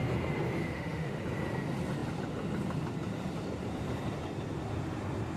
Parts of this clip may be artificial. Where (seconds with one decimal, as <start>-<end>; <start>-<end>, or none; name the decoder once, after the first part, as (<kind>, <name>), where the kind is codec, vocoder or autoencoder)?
0.6-1.2 (autoencoder, DAC-VAE)

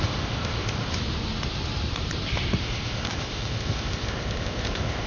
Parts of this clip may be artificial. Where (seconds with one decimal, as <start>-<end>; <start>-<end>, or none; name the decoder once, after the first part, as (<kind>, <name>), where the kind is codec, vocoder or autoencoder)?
0.0-0.9 (codec, ZipCodec); 2.6-5.1

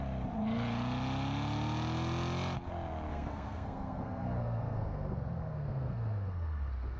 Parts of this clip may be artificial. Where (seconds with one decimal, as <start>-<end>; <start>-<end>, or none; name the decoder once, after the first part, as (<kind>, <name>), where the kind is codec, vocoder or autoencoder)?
3.1-7.0 (codec, SNAC)

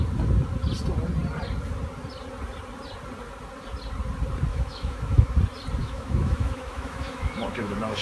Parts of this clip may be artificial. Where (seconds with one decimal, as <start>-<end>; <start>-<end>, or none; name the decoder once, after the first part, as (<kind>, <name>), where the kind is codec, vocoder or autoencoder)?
4.5-5.3 (autoencoder, DAC-VAE); 5.8-8.0

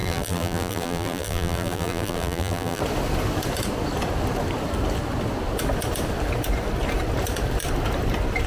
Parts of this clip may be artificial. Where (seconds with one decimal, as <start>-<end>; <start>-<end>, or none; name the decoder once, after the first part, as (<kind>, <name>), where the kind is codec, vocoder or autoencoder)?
0.0-2.8 (vocoder, BigVGAN v2)